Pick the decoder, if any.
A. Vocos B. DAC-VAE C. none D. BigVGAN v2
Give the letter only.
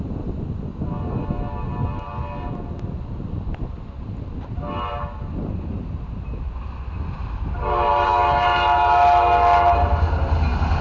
C